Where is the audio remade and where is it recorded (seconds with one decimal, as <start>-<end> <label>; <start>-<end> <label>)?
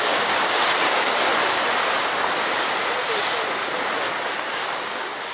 0.0-1.3 remade; 1.3-4.5 recorded; 4.5-5.3 remade